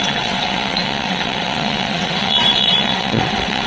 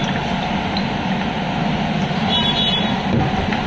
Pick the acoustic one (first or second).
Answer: second